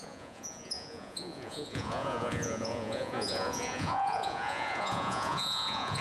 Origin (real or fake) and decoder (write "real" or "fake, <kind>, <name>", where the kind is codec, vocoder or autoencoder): fake, vocoder, Vocos